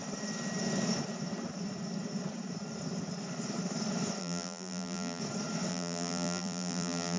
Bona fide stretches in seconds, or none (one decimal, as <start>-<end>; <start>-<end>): 0.0-4.2; 5.2-5.7